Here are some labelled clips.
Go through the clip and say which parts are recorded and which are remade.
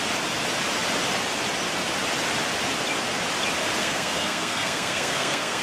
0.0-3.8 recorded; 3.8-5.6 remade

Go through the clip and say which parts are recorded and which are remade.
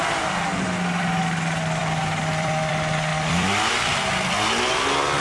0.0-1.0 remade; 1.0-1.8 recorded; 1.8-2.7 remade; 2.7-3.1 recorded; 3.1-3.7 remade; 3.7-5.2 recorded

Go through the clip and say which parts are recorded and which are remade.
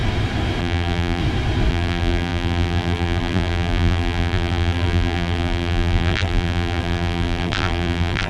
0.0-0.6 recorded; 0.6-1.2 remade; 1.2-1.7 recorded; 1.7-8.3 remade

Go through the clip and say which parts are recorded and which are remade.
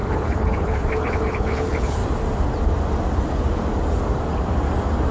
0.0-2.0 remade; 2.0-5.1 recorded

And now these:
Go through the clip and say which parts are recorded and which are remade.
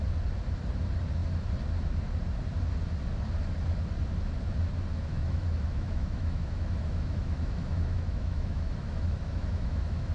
0.0-4.9 recorded; 4.9-10.1 remade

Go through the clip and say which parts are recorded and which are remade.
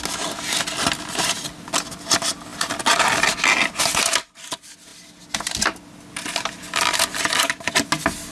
0.0-8.3 recorded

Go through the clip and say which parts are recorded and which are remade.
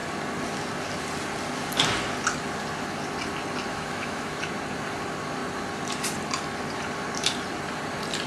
0.0-3.7 recorded; 3.7-4.4 remade; 4.4-8.3 recorded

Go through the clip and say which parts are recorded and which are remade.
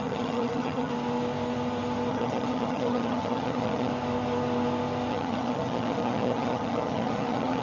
0.0-0.9 remade; 0.9-2.1 recorded; 2.1-3.9 remade; 3.9-5.1 recorded; 5.1-7.6 remade